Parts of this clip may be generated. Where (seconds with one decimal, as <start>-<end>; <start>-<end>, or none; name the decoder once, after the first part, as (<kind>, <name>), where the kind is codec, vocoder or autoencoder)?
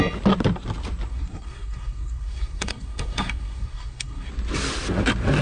1.1-4.3 (codec, SNAC)